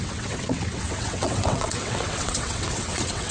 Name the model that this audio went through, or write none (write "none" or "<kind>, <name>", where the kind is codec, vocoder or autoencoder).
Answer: vocoder, WaveNeXt